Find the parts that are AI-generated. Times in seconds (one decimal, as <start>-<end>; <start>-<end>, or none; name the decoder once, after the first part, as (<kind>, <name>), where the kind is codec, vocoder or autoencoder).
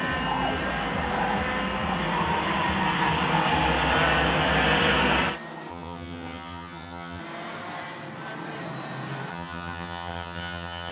5.7-7.2 (vocoder, HiFi-GAN); 9.3-10.9